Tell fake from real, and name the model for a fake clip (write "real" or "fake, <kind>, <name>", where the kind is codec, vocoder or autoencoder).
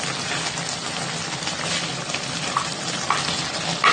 real